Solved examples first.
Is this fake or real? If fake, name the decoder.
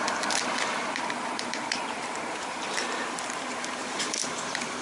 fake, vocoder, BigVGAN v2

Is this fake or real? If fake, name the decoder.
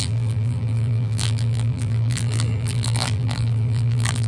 fake, vocoder, BigVGAN v2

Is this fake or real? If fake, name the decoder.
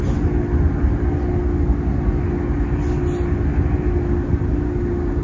real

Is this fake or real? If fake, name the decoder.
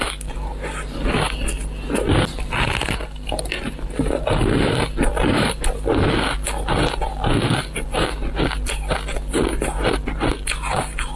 real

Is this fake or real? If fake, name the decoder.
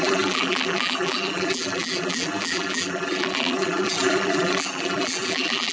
fake, vocoder, BigVGAN v2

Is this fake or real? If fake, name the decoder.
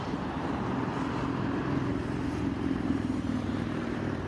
fake, vocoder, BigVGAN v2